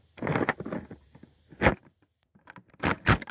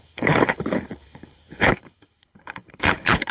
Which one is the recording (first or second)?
first